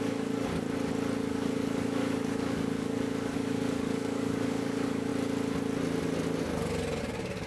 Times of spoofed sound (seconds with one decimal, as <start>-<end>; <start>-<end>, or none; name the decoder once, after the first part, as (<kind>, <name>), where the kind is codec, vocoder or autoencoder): 0.0-0.5 (codec, DAC); 1.3-5.1; 7.0-7.5